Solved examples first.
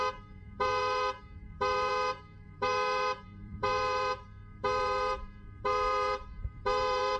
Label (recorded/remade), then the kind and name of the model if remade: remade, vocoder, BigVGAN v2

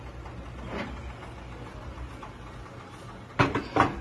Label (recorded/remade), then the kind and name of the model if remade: recorded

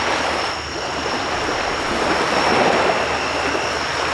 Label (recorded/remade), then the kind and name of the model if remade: recorded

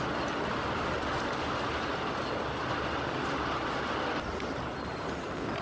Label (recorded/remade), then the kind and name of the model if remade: recorded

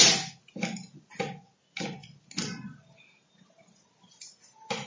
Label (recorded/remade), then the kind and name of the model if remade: recorded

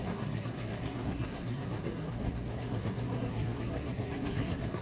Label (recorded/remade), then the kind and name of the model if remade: remade, codec, SNAC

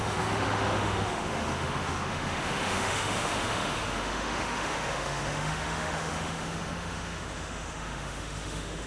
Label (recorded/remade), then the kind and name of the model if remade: remade, autoencoder, DAC-VAE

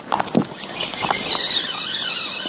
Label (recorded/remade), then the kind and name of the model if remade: recorded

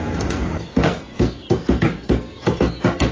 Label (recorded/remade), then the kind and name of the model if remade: remade, codec, SNAC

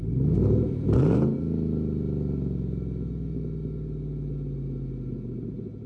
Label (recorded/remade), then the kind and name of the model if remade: recorded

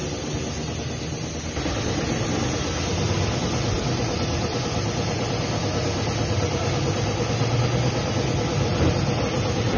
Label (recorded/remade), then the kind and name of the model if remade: recorded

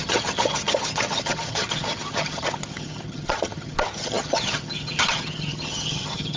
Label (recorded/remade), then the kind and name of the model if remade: remade, vocoder, HiFi-GAN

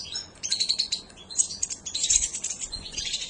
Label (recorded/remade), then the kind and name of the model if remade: remade, vocoder, Vocos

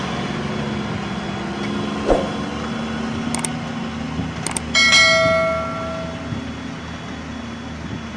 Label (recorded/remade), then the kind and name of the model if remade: recorded